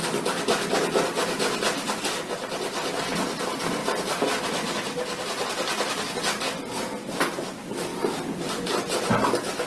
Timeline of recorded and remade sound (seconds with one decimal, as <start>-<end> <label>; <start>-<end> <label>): 0.0-3.8 recorded; 3.8-4.4 remade; 4.4-9.7 recorded